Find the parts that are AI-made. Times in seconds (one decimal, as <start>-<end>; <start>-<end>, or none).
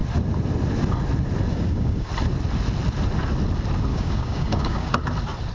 1.5-2.1; 3.9-4.9